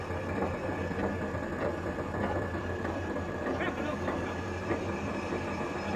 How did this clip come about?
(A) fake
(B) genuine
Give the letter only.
B